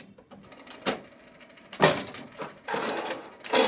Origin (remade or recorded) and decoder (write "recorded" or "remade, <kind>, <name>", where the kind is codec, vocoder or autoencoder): recorded